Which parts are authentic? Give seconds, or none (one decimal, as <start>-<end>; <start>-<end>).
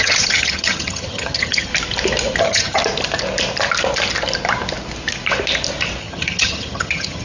1.7-2.4; 2.8-6.0